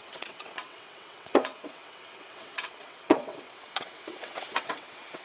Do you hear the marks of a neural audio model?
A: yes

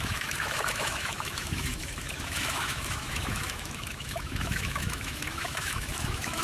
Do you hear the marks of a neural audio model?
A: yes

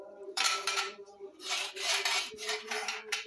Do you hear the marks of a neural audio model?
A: yes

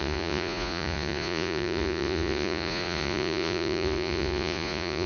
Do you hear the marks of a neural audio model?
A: yes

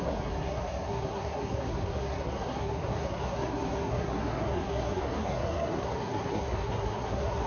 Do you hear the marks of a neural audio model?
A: yes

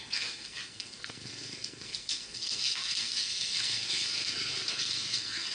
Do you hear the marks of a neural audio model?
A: yes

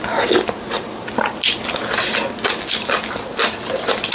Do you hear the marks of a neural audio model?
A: no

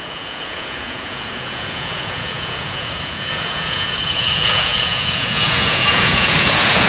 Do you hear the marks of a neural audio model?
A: yes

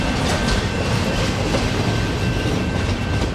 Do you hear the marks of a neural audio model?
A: no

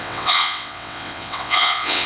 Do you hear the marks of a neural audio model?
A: yes